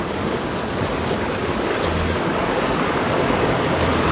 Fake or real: fake